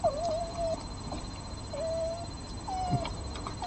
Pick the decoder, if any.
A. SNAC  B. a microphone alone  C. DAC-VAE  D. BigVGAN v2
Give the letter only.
B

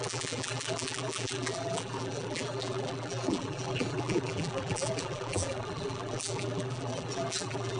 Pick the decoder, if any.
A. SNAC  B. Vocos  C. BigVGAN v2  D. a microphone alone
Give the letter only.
C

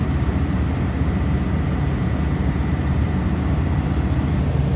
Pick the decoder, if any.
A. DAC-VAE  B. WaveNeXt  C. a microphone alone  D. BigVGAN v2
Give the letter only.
D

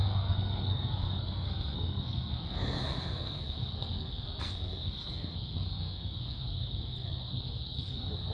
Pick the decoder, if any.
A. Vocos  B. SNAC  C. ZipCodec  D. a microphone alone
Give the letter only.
B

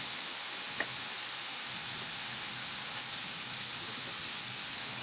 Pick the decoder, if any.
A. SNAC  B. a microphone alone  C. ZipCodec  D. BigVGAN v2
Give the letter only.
B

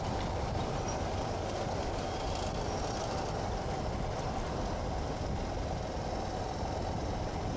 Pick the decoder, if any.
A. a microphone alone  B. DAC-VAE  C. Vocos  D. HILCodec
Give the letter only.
A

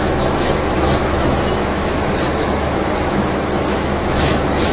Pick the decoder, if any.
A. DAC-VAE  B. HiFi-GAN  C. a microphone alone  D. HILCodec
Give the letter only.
A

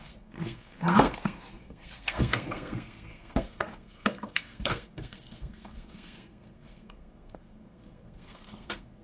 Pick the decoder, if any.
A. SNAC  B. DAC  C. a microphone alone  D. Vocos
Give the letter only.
A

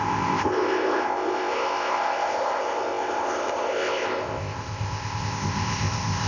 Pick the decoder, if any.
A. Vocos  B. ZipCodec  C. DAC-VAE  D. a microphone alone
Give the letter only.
B